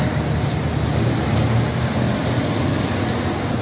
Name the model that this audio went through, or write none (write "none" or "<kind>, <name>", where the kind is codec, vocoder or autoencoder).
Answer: none